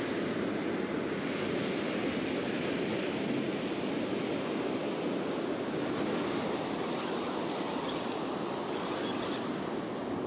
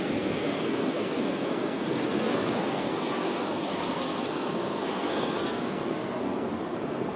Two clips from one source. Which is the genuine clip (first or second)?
first